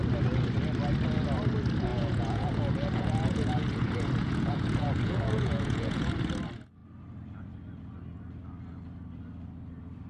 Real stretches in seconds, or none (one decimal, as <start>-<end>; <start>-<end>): 0.0-1.9; 6.1-10.1